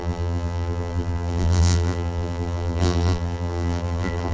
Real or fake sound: fake